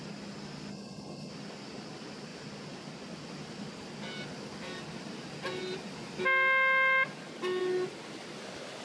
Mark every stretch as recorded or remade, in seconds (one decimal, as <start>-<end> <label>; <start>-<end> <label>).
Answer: 0.0-0.7 recorded; 0.7-1.3 remade; 1.3-8.8 recorded